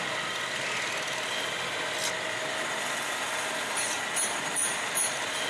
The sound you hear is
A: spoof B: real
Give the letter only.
B